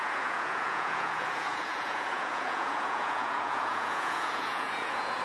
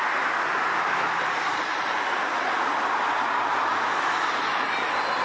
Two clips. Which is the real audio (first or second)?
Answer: second